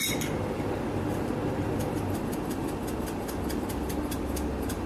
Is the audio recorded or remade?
recorded